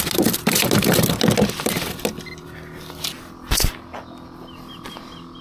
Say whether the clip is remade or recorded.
recorded